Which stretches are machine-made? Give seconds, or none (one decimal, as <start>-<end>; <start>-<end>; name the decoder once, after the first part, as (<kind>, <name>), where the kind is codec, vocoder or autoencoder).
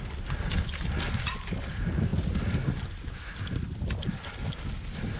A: 3.5-4.5 (vocoder, BigVGAN v2)